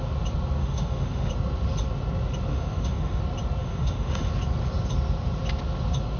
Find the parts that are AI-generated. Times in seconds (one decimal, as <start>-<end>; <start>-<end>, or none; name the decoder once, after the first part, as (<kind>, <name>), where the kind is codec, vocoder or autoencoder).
0.6-1.3 (autoencoder, DAC-VAE); 2.5-3.2; 3.6-4.3